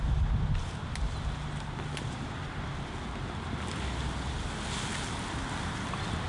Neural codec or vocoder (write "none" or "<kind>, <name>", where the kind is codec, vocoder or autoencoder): none